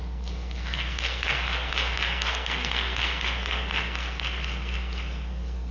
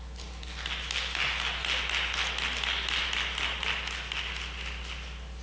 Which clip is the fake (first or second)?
first